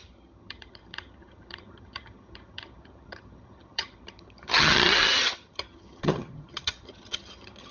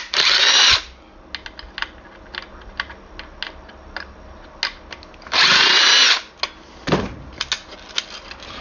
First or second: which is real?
second